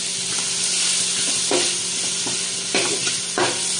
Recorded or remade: recorded